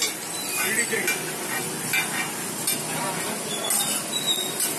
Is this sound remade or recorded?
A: recorded